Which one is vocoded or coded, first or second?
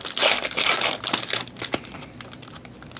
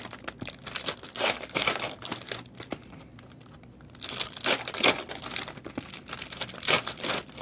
second